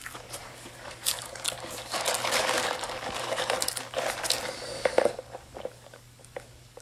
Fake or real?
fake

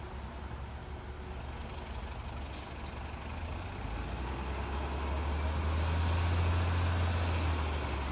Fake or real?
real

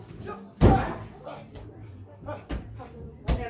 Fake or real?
real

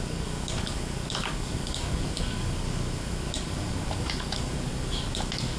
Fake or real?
fake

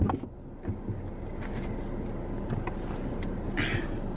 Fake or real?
real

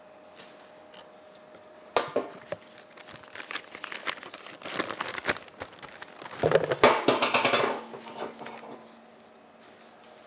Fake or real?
real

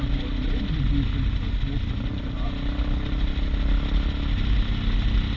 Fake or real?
real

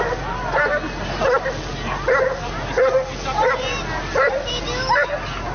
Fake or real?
real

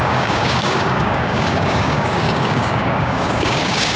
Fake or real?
fake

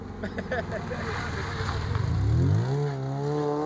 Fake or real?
real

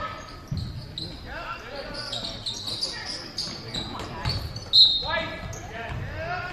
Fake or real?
real